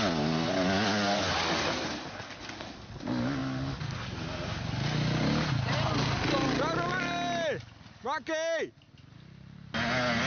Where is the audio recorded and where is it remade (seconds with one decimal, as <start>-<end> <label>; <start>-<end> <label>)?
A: 0.0-10.3 recorded